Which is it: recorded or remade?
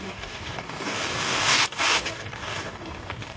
remade